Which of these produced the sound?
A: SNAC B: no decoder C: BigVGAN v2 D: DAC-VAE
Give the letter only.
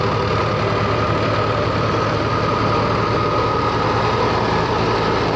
B